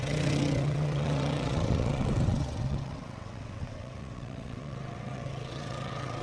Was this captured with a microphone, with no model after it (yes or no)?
no